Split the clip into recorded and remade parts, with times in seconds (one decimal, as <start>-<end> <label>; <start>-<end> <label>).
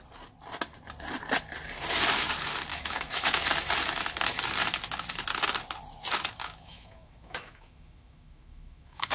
0.0-2.7 recorded; 2.7-3.4 remade; 3.4-6.4 recorded; 6.4-9.1 remade